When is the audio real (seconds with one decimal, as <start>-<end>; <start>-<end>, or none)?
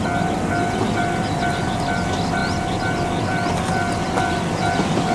0.0-5.1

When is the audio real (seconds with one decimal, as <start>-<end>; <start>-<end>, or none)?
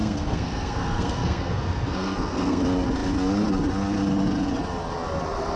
2.6-5.6